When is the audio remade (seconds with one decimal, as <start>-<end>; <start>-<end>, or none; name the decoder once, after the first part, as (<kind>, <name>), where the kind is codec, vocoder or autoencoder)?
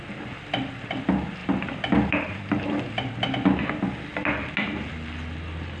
1.4-3.6 (vocoder, BigVGAN v2)